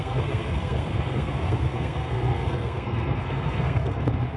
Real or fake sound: fake